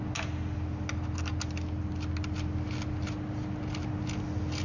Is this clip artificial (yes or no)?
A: no